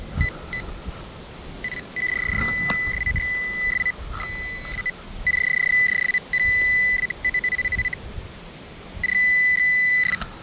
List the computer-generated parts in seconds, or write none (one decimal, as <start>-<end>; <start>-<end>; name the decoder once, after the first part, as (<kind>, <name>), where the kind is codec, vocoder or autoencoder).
none